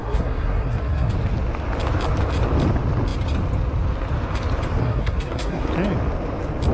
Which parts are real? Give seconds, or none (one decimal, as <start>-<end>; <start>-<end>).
1.1-4.8; 5.7-6.7